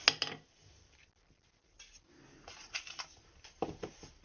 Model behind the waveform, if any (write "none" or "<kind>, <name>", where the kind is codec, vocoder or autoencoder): none